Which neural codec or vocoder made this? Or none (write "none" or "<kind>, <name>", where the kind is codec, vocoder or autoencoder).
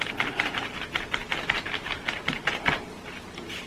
none